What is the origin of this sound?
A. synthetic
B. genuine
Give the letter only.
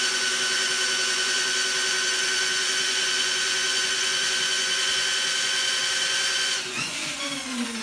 A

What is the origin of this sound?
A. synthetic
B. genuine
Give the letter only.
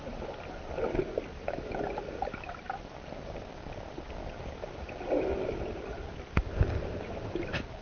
B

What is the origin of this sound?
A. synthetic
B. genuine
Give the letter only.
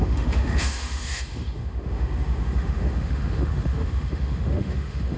A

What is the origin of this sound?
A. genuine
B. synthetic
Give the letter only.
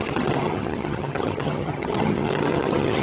B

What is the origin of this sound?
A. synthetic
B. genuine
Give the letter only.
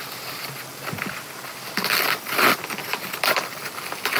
B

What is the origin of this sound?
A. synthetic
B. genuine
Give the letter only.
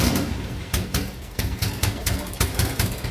A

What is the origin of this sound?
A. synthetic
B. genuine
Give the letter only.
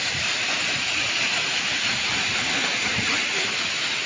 B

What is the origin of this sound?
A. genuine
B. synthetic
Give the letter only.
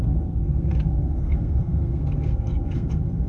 B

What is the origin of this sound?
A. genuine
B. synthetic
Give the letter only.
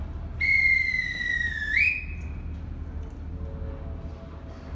A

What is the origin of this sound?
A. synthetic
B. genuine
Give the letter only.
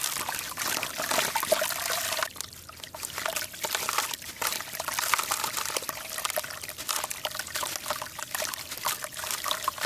B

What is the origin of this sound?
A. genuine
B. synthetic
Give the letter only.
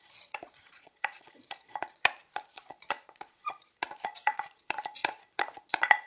B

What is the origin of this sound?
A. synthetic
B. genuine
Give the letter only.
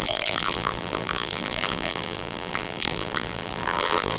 A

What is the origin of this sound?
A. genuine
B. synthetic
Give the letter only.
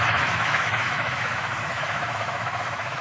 B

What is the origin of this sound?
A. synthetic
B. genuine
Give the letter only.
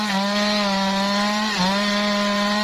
A